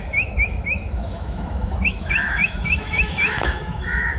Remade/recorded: remade